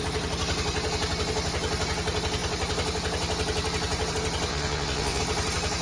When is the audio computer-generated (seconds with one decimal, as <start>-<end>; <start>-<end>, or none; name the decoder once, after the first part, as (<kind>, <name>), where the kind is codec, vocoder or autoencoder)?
4.5-5.2 (vocoder, WaveNeXt)